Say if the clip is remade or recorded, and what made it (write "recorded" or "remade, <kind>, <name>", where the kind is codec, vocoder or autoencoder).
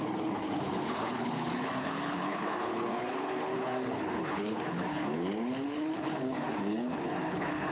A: remade, codec, HILCodec